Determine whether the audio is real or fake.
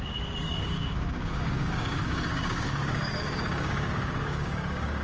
fake